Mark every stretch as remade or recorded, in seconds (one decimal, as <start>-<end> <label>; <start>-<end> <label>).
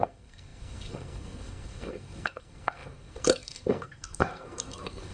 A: 0.0-5.1 remade